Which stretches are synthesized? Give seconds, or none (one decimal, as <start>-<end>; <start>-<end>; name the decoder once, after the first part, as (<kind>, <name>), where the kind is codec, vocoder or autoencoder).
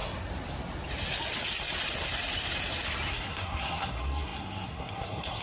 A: 3.1-5.4 (codec, SNAC)